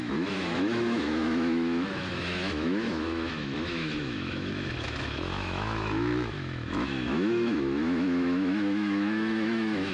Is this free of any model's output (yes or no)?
no